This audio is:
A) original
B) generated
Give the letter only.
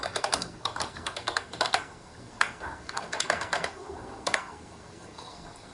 B